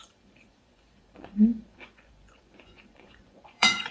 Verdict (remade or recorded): remade